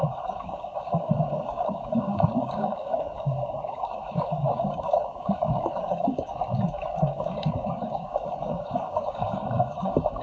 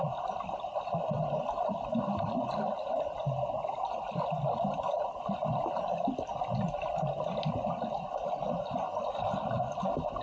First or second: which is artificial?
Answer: first